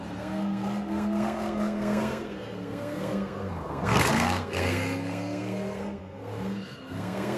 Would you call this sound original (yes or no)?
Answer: no